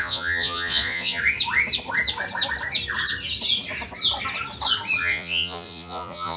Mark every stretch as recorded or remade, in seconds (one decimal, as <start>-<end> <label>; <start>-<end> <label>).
0.0-1.2 remade; 1.2-5.0 recorded; 5.0-6.4 remade